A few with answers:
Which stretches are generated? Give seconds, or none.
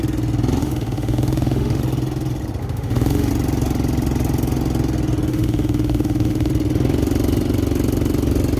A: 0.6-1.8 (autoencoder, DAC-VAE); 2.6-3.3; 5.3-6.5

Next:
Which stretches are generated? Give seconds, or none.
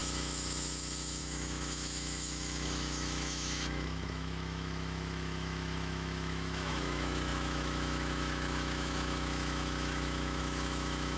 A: 0.0-11.2 (autoencoder, DAC-VAE)